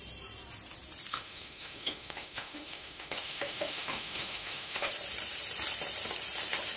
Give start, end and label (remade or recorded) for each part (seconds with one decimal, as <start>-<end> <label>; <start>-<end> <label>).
0.0-1.1 recorded; 1.1-4.9 remade; 4.9-6.8 recorded